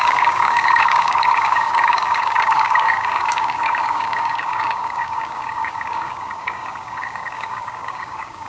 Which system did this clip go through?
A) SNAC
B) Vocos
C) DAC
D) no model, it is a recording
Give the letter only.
C